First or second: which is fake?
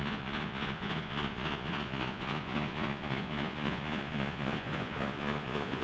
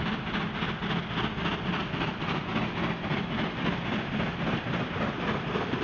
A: first